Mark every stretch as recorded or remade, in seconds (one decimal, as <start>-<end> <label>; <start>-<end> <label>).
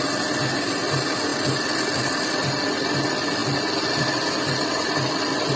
0.0-5.6 recorded